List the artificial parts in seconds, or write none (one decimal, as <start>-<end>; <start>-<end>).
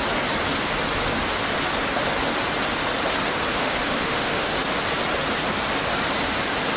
3.5-4.5